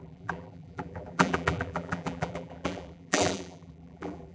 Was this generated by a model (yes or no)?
yes